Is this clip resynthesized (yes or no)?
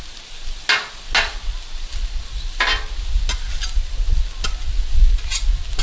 no